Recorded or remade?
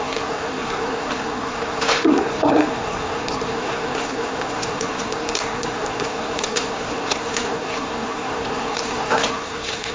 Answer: remade